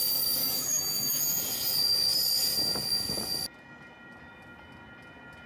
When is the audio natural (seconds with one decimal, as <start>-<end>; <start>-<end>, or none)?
0.0-0.4; 1.2-5.5